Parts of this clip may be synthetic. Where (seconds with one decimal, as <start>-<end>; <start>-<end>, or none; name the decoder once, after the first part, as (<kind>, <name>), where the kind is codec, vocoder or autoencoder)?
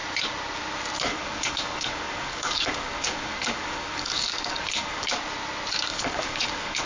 1.1-5.2 (codec, DAC); 5.9-6.9